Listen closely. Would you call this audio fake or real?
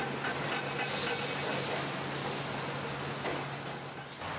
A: real